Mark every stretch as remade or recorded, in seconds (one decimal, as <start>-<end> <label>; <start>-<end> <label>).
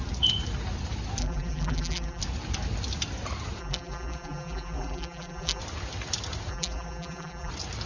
0.0-1.2 recorded; 1.2-2.2 remade; 2.2-3.6 recorded; 3.6-5.6 remade; 5.6-6.5 recorded; 6.5-7.5 remade; 7.5-7.9 recorded